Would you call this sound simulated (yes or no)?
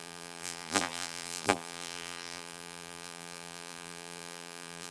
yes